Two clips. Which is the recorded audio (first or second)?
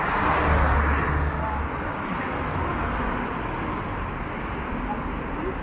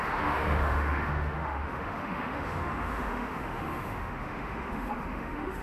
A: first